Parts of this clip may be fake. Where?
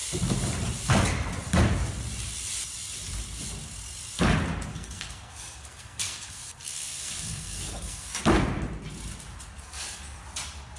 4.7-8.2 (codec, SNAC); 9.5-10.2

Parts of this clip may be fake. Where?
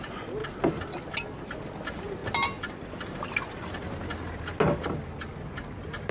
none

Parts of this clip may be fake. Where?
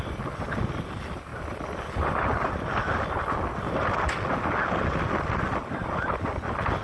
none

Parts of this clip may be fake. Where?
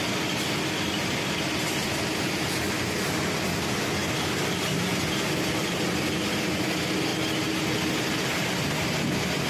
none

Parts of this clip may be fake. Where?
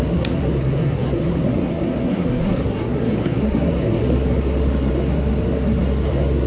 0.0-6.5 (codec, SNAC)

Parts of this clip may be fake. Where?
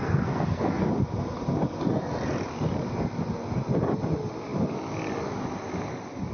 0.0-0.7 (codec, SNAC)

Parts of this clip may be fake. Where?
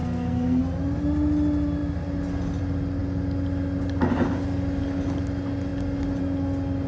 0.0-0.6 (codec, SNAC)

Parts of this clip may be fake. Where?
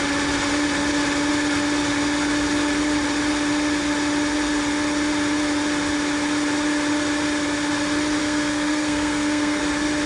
8.2-9.6 (codec, SNAC)